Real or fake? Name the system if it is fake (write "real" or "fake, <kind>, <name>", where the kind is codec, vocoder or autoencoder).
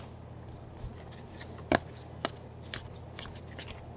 real